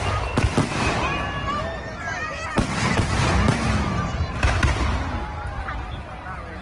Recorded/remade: recorded